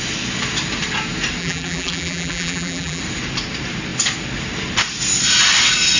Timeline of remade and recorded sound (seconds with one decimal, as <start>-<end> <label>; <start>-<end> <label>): 0.0-1.4 recorded; 1.4-3.0 remade; 3.0-6.0 recorded